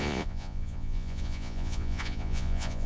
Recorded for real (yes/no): no